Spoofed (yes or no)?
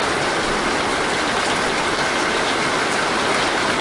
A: no